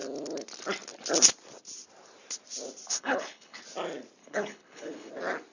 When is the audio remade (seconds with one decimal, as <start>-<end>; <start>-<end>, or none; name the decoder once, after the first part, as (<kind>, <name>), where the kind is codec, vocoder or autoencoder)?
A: 2.9-3.6 (codec, HILCodec); 4.2-5.1